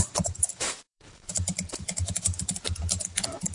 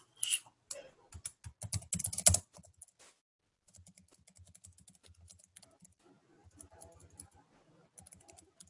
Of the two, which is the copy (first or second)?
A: first